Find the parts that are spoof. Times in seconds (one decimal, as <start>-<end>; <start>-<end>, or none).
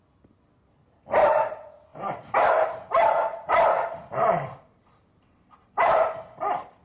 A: 1.9-6.0